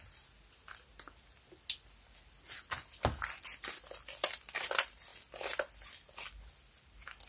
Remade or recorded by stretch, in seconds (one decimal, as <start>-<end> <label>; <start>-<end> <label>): 0.0-7.3 recorded